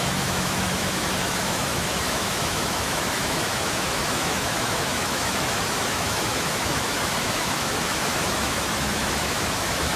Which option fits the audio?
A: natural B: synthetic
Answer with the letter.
B